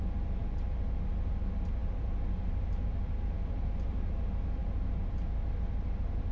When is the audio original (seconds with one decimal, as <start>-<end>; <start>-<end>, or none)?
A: 0.0-0.4; 1.1-1.8; 4.1-4.6; 5.1-6.3